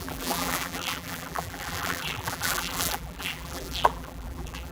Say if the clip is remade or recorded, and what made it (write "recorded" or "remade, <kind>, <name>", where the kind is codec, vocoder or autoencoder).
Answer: remade, vocoder, BigVGAN v2